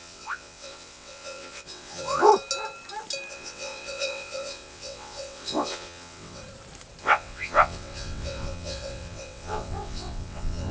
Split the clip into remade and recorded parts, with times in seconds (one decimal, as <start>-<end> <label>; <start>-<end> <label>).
0.0-2.3 remade; 2.3-3.3 recorded; 3.3-6.4 remade; 6.4-7.0 recorded; 7.0-10.7 remade